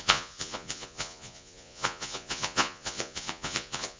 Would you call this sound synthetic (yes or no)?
yes